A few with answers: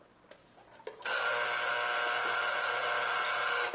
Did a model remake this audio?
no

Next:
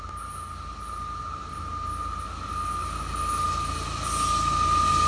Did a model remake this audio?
no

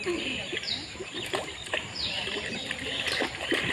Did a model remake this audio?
yes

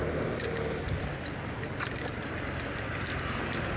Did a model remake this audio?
no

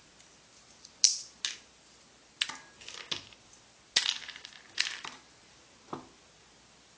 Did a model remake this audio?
no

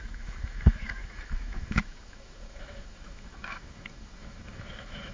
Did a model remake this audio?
yes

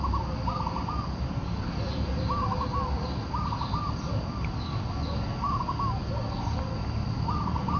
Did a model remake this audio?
no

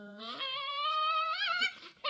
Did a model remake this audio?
yes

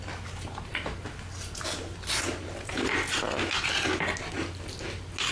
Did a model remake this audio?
no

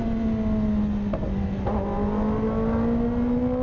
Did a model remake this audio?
no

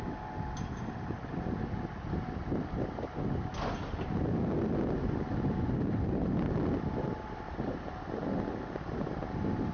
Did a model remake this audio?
no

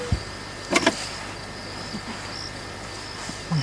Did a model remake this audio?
no